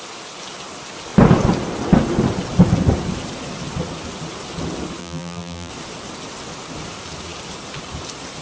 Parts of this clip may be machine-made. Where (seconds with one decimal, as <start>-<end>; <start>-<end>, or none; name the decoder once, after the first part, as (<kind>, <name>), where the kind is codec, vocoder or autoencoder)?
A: 5.0-5.7 (vocoder, BigVGAN v2)